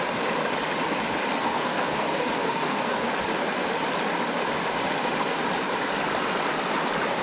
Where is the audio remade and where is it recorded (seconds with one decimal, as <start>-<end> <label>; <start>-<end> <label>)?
0.0-1.4 recorded; 1.4-3.1 remade; 3.1-7.2 recorded